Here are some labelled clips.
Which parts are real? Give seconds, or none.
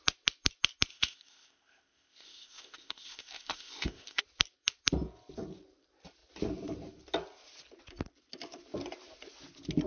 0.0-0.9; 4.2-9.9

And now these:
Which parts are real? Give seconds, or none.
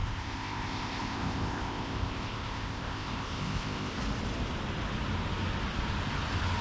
4.0-6.6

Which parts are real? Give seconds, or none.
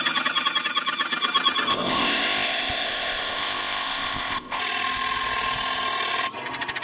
0.0-1.7; 4.6-6.8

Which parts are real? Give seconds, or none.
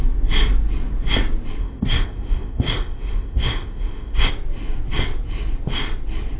0.0-1.6; 4.3-6.4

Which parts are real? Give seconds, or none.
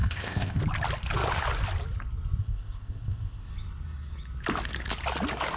0.6-2.4; 3.5-5.6